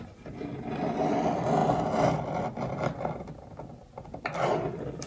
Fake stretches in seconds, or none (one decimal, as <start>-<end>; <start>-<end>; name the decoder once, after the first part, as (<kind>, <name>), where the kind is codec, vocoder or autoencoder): none